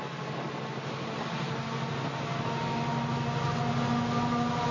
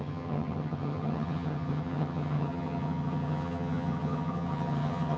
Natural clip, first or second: first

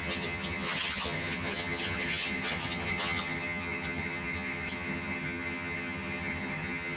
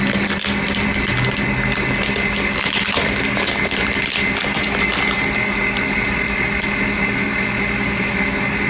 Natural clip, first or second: second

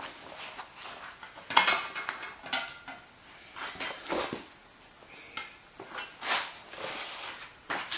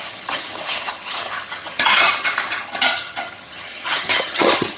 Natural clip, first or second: first